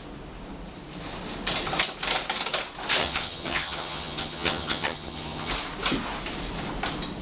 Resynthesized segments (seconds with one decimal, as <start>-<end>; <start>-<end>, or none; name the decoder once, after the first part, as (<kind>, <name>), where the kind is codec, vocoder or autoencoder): 3.0-5.5 (vocoder, HiFi-GAN)